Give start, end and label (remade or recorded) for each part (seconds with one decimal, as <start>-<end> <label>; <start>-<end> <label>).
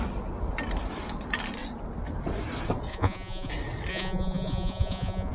0.0-2.9 recorded; 2.9-3.5 remade; 3.5-3.9 recorded; 3.9-5.3 remade